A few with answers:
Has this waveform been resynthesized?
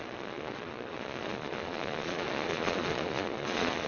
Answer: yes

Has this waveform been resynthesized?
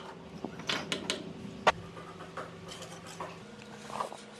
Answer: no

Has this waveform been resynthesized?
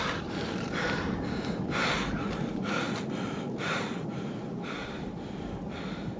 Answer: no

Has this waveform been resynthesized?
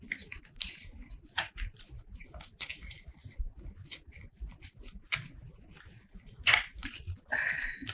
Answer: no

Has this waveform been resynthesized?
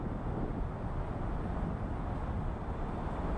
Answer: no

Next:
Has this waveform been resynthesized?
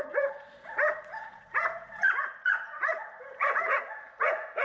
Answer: yes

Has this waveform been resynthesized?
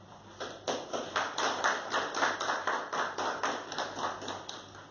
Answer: no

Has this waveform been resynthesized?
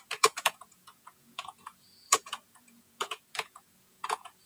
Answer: yes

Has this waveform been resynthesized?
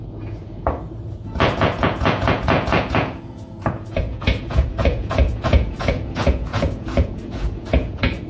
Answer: yes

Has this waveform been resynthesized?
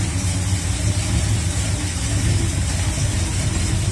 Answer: no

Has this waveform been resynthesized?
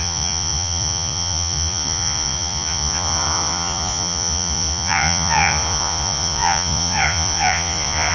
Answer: yes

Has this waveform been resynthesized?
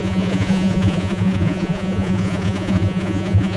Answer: yes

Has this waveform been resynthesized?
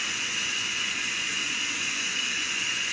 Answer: yes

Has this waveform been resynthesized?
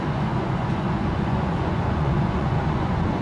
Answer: yes